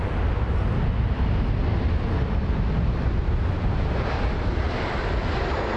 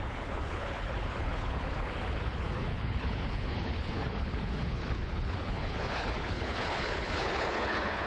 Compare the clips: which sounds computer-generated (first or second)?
second